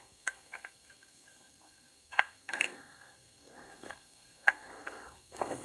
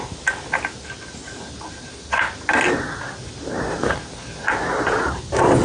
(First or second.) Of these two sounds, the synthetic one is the first